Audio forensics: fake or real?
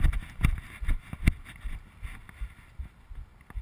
real